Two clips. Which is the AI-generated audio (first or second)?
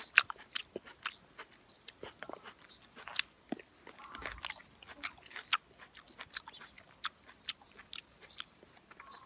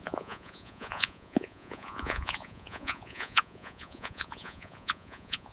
second